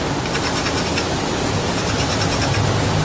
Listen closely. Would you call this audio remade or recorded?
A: recorded